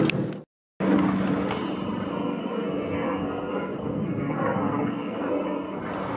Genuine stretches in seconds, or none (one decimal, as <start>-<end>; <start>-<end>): 0.0-2.1; 5.8-6.2